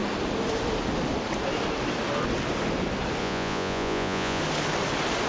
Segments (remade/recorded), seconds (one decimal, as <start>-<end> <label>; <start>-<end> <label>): 0.0-3.2 recorded; 3.2-4.4 remade; 4.4-5.3 recorded